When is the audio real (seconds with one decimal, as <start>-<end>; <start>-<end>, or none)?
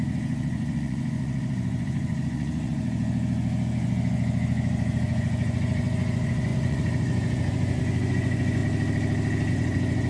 8.6-9.5